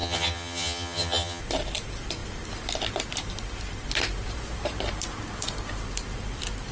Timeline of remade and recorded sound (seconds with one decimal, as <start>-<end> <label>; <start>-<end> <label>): 0.0-1.4 remade; 1.4-6.7 recorded